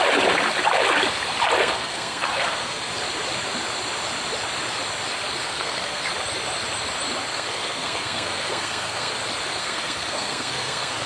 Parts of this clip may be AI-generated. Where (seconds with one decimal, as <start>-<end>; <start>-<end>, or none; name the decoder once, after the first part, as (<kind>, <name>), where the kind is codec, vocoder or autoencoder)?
1.6-2.9 (codec, SNAC); 5.4-6.0; 7.3-9.1; 9.6-11.1